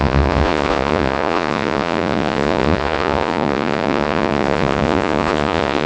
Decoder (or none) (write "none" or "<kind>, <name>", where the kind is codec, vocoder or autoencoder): vocoder, Vocos